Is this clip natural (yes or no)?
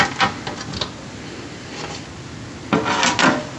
yes